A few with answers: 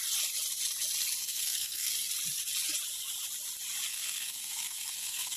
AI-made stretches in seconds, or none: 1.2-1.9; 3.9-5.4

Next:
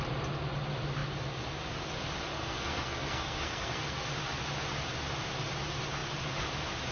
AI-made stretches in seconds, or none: 2.3-4.1